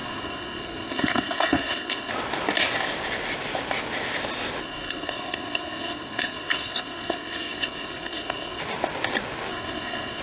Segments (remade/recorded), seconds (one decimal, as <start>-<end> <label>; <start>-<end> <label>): 0.0-2.1 remade; 2.1-4.6 recorded; 4.6-8.6 remade; 8.6-9.5 recorded; 9.5-10.2 remade